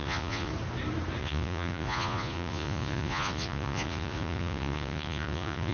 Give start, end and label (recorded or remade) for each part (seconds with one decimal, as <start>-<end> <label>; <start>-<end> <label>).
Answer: 0.0-0.5 remade; 0.5-1.2 recorded; 1.2-5.7 remade